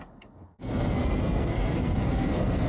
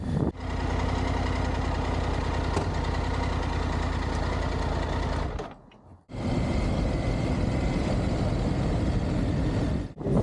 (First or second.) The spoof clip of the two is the first